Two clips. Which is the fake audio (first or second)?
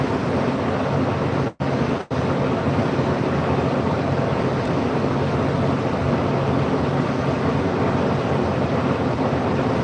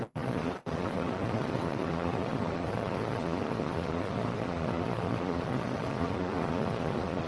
second